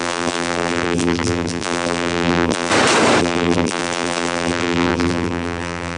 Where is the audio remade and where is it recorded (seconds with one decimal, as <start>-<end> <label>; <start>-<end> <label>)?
0.0-2.7 remade; 2.7-3.2 recorded; 3.2-6.0 remade